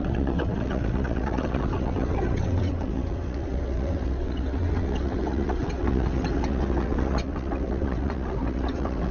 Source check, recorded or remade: remade